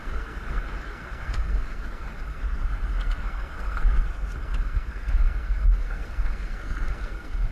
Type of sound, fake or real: fake